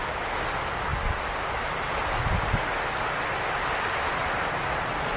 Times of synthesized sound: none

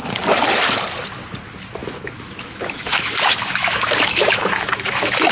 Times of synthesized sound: 1.8-5.3 (autoencoder, DAC-VAE)

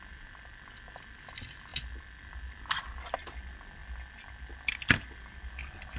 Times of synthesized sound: none

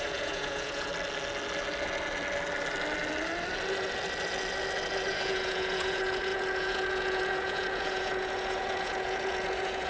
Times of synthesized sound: 0.0-0.9 (vocoder, Vocos); 5.1-9.9

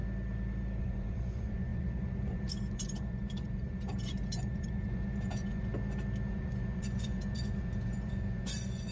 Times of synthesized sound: 0.8-5.7 (vocoder, Vocos); 6.3-8.9

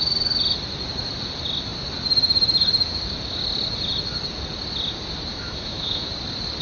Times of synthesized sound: 5.3-6.1 (autoencoder, DAC-VAE)

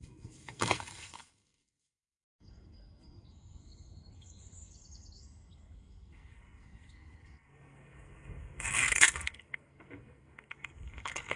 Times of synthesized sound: 0.0-11.4 (codec, SNAC)

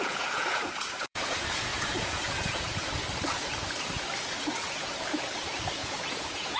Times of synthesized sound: 0.0-3.0 (vocoder, Vocos); 4.2-6.6